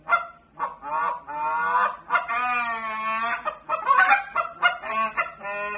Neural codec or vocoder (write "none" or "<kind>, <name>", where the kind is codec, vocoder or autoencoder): none